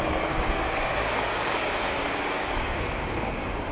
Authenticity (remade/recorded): remade